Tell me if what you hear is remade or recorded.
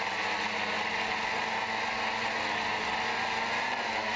recorded